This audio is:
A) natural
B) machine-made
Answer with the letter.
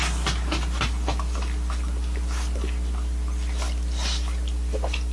A